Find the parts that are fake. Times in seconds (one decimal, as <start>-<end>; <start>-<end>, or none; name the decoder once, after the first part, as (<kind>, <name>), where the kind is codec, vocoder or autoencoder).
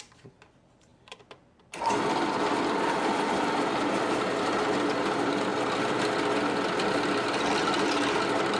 0.0-5.5 (vocoder, BigVGAN v2); 6.5-8.6